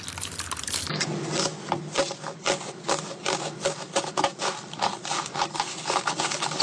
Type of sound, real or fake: real